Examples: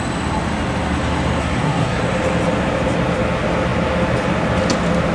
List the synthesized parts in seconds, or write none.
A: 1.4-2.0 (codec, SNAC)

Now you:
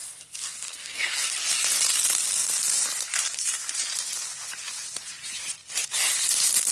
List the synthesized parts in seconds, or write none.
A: 0.0-1.3 (codec, SNAC)

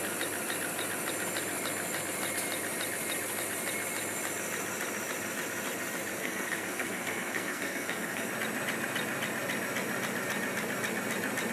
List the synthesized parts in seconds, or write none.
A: 6.1-8.3 (codec, SNAC)